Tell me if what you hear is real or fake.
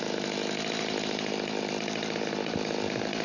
real